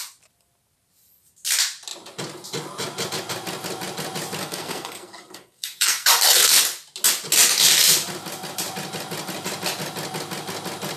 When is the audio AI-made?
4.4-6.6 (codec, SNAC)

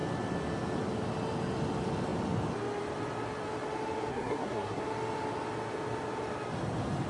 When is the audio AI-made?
4.1-4.8 (codec, SNAC)

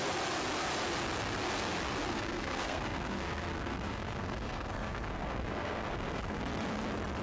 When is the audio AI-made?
2.1-6.4 (codec, SNAC)

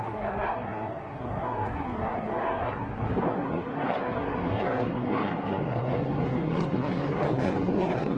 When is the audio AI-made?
0.0-8.2 (codec, SNAC)

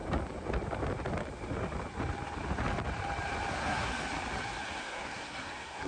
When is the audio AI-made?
3.5-3.9 (codec, SNAC); 4.8-5.9